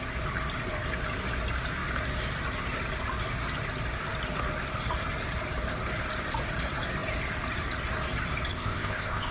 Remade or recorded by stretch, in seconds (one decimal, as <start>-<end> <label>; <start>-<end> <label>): 0.0-8.5 recorded; 8.5-9.3 remade